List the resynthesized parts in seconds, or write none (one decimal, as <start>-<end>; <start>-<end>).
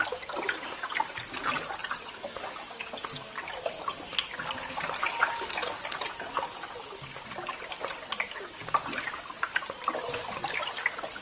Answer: none